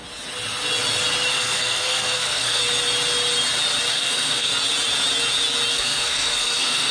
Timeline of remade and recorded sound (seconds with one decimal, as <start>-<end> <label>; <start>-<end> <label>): 0.0-1.3 recorded; 1.3-2.6 remade; 2.6-3.9 recorded; 3.9-4.5 remade; 4.5-5.7 recorded; 5.7-6.9 remade